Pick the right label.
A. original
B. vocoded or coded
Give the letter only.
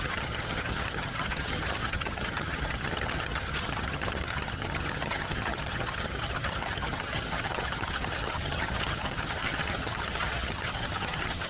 B